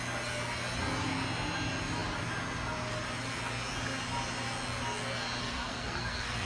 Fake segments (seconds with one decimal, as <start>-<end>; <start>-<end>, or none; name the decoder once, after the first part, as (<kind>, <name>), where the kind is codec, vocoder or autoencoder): 5.4-6.5 (codec, SNAC)